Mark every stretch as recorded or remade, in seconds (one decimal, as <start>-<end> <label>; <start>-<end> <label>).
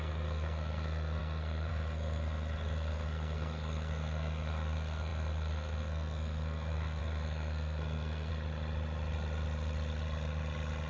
0.0-8.3 remade; 8.3-10.9 recorded